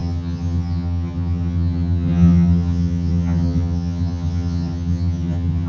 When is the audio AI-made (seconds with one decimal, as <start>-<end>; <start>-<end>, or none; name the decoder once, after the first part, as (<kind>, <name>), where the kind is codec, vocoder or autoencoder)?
0.0-5.7 (vocoder, HiFi-GAN)

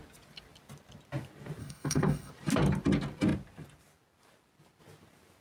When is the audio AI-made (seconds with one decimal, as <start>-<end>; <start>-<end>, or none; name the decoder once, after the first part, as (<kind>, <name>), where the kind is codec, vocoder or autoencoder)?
1.6-2.3 (codec, SNAC)

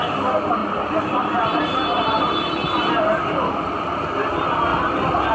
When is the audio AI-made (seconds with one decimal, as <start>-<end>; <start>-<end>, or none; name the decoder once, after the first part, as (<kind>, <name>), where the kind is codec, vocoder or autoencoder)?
0.6-3.0 (vocoder, BigVGAN v2); 4.7-5.3

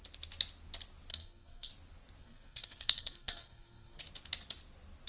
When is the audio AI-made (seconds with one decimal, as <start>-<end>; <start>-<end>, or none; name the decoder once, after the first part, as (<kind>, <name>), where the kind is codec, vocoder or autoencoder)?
1.1-1.7 (codec, SNAC); 2.2-4.0

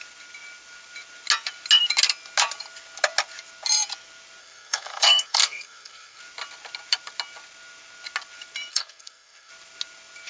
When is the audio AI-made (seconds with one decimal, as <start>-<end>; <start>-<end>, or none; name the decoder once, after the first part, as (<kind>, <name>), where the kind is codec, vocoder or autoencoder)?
4.4-6.2 (codec, SNAC); 8.7-9.5

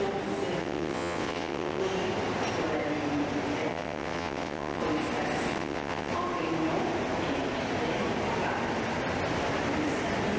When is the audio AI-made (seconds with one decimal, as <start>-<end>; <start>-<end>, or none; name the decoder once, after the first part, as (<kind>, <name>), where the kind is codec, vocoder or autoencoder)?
0.6-1.8 (vocoder, WaveNeXt); 3.7-4.8; 5.5-6.1

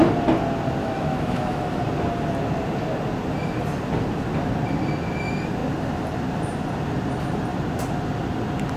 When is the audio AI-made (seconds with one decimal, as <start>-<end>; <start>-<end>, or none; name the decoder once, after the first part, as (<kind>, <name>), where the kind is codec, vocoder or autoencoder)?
0.8-1.8 (autoencoder, DAC-VAE)